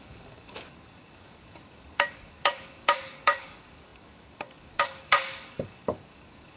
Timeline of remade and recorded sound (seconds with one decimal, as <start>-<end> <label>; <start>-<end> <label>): 0.0-6.6 remade